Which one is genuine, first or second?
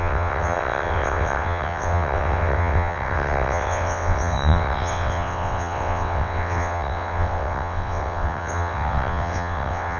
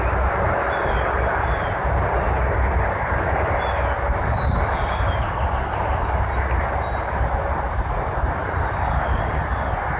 second